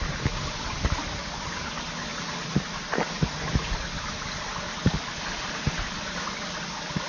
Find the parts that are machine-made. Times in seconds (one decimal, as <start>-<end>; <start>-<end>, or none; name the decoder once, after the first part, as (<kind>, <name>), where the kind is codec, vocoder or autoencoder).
none